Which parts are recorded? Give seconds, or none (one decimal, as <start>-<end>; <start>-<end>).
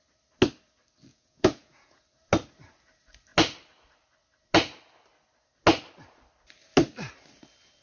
0.0-1.1; 2.0-7.8